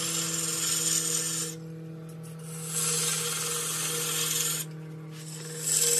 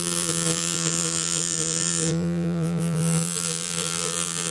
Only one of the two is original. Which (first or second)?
first